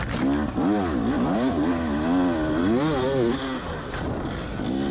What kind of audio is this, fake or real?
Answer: real